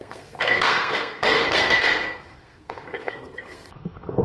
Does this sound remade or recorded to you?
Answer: remade